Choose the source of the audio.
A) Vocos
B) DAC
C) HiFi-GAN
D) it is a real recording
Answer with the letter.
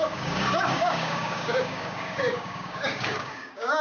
B